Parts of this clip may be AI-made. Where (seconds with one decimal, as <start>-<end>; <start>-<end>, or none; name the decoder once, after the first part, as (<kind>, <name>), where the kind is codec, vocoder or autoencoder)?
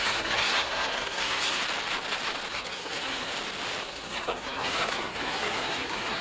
0.0-1.6 (codec, SNAC); 2.5-3.3; 3.8-6.2